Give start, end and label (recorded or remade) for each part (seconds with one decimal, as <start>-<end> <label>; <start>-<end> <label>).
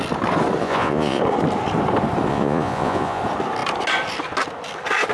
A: 0.0-0.6 recorded; 0.6-1.2 remade; 1.2-2.3 recorded; 2.3-3.2 remade; 3.2-5.1 recorded